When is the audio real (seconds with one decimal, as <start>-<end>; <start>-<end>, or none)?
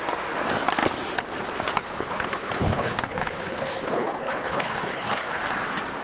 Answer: 0.0-1.8; 5.4-6.0